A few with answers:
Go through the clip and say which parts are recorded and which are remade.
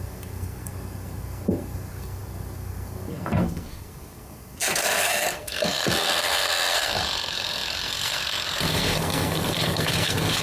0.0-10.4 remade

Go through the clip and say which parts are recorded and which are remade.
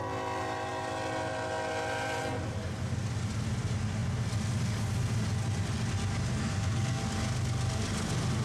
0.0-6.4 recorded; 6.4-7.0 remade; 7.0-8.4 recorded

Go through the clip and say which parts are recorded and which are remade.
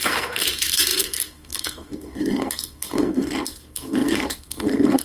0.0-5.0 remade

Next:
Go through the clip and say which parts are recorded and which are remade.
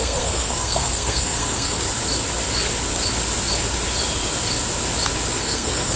0.0-1.8 remade; 1.8-5.4 recorded; 5.4-6.0 remade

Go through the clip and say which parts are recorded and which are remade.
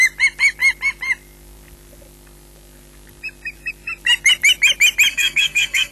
0.0-5.1 recorded; 5.1-5.9 remade